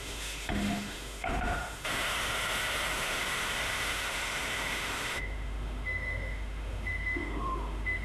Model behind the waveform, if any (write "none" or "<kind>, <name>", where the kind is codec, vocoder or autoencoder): autoencoder, DAC-VAE